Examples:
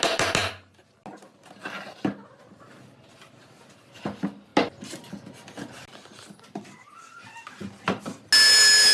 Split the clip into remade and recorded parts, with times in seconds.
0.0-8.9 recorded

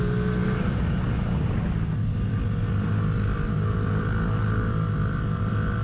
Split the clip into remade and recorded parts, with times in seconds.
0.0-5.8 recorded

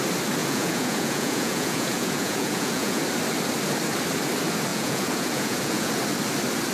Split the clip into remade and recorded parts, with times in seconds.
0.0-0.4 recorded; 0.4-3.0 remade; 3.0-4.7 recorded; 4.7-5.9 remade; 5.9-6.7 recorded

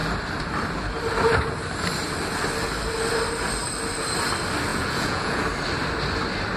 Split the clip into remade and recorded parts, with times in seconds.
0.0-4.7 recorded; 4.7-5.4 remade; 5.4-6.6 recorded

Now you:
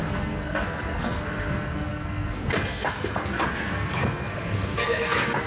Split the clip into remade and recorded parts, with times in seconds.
0.0-5.5 remade